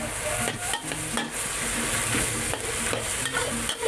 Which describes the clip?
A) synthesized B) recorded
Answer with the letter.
B